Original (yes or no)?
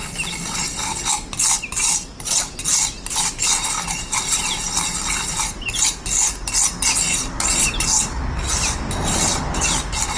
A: yes